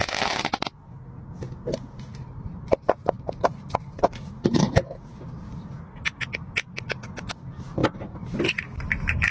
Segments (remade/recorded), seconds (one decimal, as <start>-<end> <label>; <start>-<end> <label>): 0.0-2.1 recorded; 2.1-4.6 remade; 4.6-7.8 recorded; 7.8-8.4 remade; 8.4-9.3 recorded